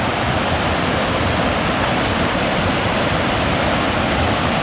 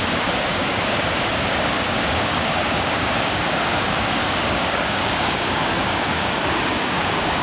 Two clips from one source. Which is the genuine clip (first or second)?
first